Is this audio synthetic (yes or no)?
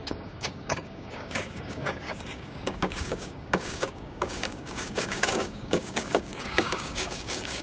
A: yes